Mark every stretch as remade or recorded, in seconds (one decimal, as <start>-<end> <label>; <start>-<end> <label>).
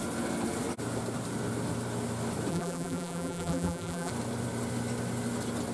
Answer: 0.0-2.5 recorded; 2.5-4.1 remade; 4.1-5.7 recorded